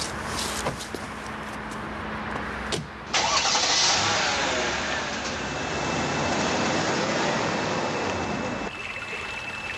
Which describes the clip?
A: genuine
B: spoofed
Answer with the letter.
A